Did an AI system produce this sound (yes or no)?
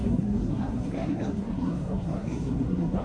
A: yes